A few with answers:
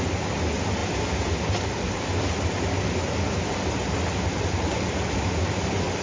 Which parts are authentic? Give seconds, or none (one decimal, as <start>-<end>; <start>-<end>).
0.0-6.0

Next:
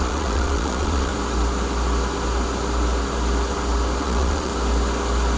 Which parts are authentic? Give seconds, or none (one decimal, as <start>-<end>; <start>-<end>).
1.1-4.0; 4.5-5.4

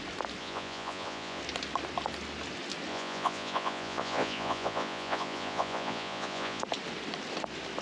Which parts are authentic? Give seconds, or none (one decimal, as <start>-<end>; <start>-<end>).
0.0-0.4; 1.4-2.9; 6.6-7.8

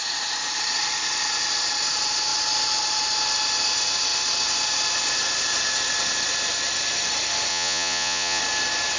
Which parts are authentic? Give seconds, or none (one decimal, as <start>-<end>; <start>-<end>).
0.0-7.5; 8.4-9.0

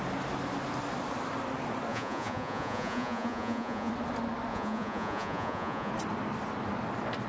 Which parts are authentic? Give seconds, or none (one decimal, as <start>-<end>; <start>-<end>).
0.0-1.9; 3.9-4.5; 5.9-7.3